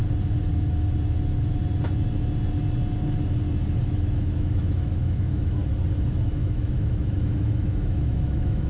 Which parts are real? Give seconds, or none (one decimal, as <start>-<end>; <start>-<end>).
0.0-3.8; 5.6-6.1